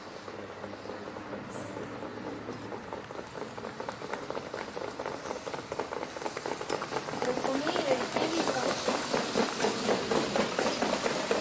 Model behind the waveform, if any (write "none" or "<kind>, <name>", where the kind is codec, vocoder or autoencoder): none